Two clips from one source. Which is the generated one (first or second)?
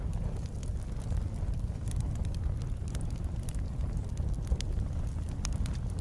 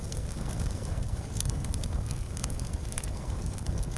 second